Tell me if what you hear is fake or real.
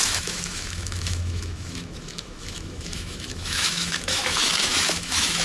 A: fake